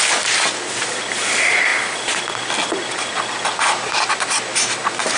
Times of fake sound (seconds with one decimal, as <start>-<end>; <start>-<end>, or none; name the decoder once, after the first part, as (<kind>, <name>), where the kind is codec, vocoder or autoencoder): none